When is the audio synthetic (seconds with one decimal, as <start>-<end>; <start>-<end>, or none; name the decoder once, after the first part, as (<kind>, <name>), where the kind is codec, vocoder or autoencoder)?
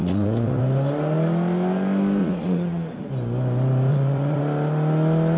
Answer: 0.0-0.6 (vocoder, Vocos); 2.2-3.1; 3.9-4.4